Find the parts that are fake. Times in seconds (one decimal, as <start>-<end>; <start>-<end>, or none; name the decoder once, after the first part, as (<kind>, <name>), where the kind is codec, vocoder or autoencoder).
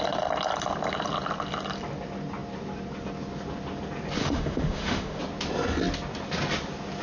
4.2-5.2 (autoencoder, DAC-VAE)